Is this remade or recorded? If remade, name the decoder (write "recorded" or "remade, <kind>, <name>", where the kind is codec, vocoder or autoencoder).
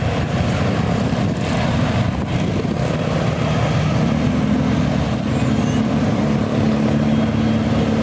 recorded